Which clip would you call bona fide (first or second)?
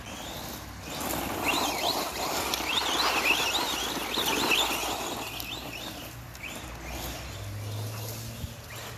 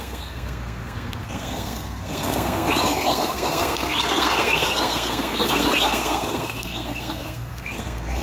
first